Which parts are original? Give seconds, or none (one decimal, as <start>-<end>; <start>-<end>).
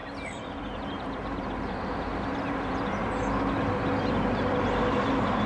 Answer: 3.0-5.5